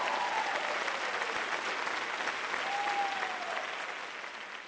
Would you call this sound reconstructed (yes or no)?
no